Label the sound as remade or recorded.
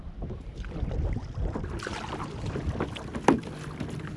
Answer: recorded